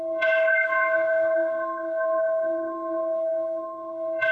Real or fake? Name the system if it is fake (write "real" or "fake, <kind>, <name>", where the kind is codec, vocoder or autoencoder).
fake, codec, DAC